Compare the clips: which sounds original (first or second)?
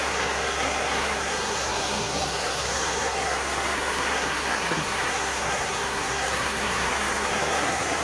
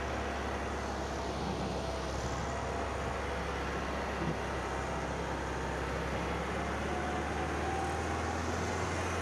second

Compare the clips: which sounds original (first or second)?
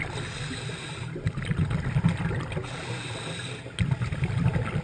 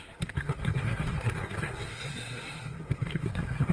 first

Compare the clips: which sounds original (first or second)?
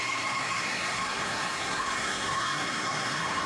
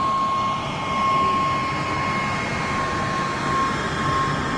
second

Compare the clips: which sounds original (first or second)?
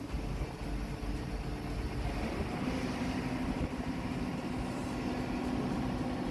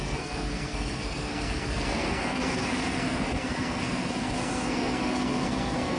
first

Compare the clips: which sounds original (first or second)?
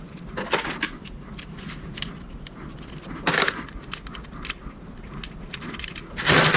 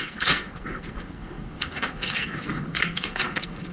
first